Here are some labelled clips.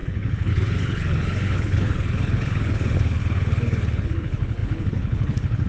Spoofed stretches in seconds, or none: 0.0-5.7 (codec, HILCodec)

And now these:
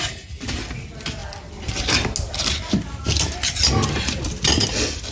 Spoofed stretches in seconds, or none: none

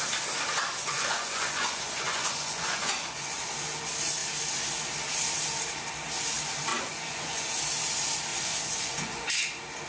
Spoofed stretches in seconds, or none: 0.8-3.5 (vocoder, Vocos); 6.7-7.5; 8.3-9.3

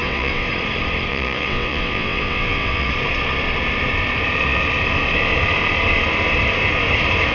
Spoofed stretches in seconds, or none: 0.0-0.5 (vocoder, WaveNeXt); 1.1-2.9

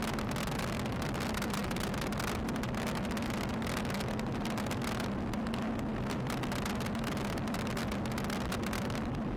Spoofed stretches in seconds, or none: none

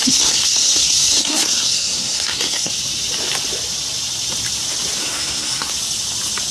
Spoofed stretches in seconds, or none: 0.0-2.7 (codec, SNAC); 5.0-5.7

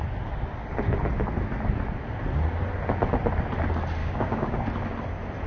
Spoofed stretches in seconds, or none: 4.0-4.7 (codec, DAC)